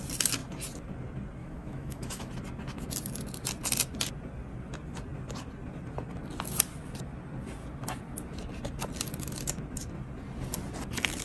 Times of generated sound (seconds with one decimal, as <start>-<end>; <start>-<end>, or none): 1.4-2.3

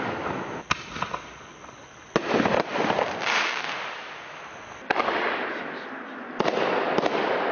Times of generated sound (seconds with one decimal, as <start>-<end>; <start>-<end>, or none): none

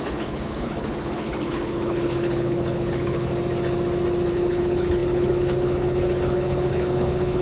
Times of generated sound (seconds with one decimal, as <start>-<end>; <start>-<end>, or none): 0.0-3.3; 4.3-7.4

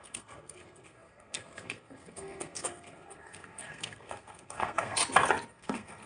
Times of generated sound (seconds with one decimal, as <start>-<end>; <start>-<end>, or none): 0.0-5.0; 5.5-6.1